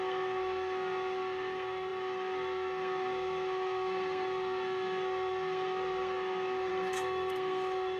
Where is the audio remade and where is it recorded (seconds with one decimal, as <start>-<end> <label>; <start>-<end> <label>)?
0.0-8.0 remade